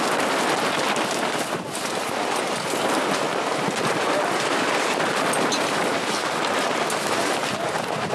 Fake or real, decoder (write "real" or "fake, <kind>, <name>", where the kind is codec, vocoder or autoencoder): real